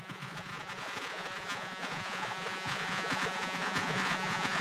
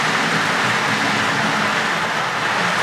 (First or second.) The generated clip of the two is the first